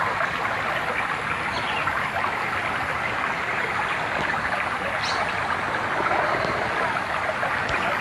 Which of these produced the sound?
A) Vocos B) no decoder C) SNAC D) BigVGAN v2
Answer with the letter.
B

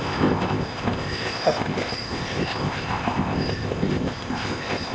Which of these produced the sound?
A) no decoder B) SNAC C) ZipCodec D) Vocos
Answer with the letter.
C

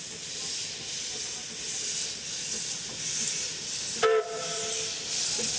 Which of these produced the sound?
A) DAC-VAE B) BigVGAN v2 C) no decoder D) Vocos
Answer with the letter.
C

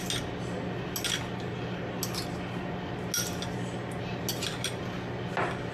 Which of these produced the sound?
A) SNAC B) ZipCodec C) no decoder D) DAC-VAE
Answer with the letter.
C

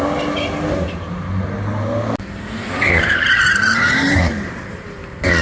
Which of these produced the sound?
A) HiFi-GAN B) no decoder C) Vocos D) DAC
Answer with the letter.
B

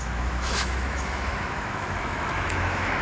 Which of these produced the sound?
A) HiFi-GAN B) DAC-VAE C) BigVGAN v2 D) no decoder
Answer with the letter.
B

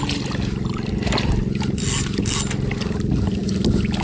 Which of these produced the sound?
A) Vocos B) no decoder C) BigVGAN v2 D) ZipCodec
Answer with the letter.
B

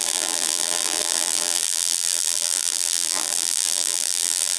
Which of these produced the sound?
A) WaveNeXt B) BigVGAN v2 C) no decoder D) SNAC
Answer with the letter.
B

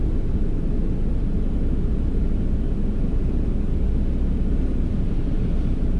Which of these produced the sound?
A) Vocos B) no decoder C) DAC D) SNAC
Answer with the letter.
B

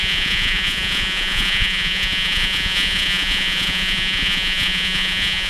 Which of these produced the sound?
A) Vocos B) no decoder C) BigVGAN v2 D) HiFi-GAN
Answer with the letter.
A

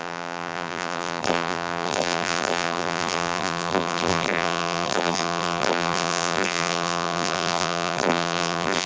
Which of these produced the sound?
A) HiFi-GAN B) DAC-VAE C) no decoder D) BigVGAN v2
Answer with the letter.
D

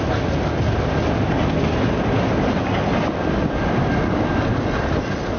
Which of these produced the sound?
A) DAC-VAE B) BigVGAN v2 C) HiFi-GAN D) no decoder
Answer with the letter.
D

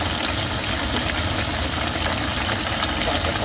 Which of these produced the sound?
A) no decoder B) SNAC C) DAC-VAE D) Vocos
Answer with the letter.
A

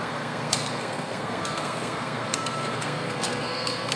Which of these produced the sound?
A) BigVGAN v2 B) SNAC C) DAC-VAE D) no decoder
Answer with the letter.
B